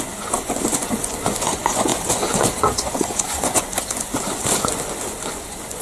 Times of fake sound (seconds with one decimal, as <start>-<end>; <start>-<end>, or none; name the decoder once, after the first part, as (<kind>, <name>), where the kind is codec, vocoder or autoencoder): 0.0-5.8 (vocoder, Vocos)